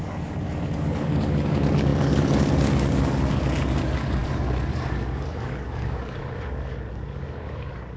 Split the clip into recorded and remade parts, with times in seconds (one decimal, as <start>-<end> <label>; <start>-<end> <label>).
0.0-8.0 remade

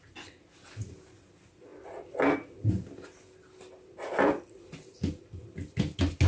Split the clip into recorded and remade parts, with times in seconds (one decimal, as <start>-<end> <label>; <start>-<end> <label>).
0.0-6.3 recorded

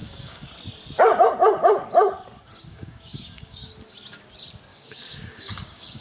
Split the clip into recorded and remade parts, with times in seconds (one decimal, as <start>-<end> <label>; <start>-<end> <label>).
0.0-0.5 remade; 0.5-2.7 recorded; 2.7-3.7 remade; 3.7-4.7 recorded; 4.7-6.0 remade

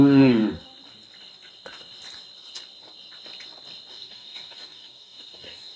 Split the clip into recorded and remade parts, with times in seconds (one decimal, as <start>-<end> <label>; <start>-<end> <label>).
0.0-0.4 remade; 0.4-3.9 recorded; 3.9-5.8 remade

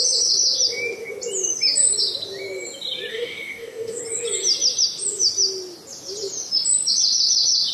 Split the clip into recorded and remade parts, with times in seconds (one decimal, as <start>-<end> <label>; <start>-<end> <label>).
0.0-3.1 recorded; 3.1-4.0 remade; 4.0-7.7 recorded

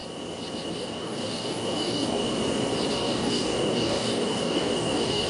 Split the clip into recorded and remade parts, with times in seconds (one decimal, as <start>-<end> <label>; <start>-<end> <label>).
0.0-0.7 recorded; 0.7-2.4 remade; 2.4-2.9 recorded; 2.9-5.3 remade

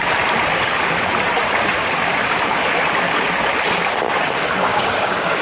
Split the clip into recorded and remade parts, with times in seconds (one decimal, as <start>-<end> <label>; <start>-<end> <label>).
0.0-4.7 recorded; 4.7-5.4 remade

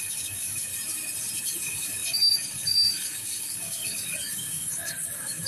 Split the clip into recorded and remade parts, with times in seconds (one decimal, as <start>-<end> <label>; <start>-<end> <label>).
0.0-0.7 remade; 0.7-1.4 recorded; 1.4-5.5 remade